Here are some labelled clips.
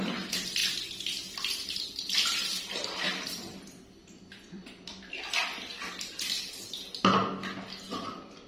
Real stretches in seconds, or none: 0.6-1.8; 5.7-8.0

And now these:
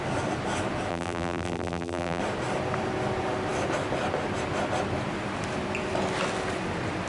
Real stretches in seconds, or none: 0.0-0.9; 2.2-7.1

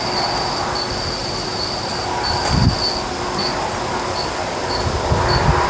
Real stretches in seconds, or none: 0.0-1.2; 1.9-5.7

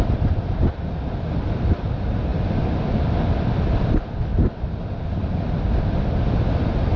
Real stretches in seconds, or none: 4.3-5.7

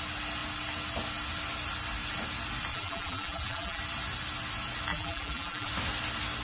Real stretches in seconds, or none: 0.0-2.7; 3.8-4.9; 5.7-6.4

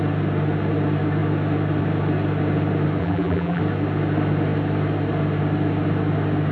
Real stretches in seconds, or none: 0.0-3.0; 3.6-6.5

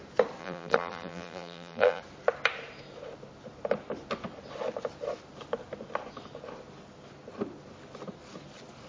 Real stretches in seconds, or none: 0.0-0.4; 2.0-8.9

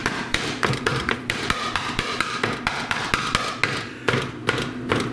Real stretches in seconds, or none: 3.1-5.1